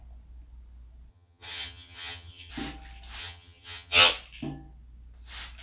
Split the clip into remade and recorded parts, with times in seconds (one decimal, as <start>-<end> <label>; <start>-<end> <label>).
0.0-1.1 recorded; 1.1-2.5 remade; 2.5-3.2 recorded; 3.2-4.1 remade; 4.1-5.6 recorded

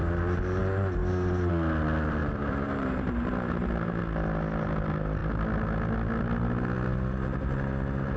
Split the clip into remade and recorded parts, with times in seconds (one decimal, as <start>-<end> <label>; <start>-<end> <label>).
0.0-2.2 recorded; 2.2-4.0 remade; 4.0-8.2 recorded